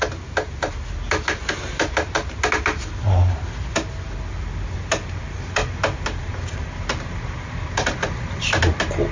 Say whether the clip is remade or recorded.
recorded